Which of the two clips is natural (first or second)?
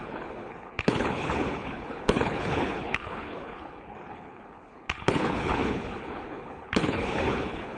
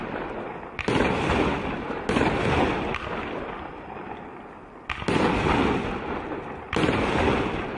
second